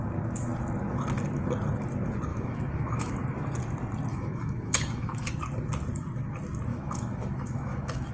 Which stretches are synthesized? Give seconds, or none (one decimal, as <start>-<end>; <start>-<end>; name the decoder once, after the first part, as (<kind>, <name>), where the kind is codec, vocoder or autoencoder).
2.3-3.1 (autoencoder, DAC-VAE); 4.1-5.3; 6.7-8.1